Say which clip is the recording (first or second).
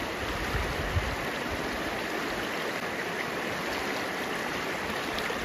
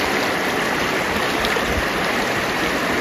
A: second